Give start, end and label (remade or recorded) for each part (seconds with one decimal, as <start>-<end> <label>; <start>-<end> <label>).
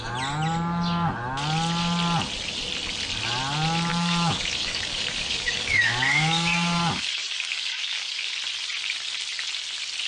0.0-3.9 recorded; 3.9-8.3 remade; 8.3-10.1 recorded